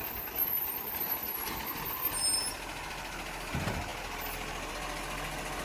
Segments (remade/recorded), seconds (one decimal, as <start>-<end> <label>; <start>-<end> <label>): 0.0-5.6 recorded